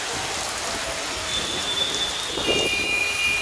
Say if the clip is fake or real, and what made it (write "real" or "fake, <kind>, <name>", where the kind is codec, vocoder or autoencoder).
real